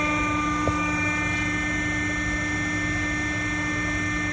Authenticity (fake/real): real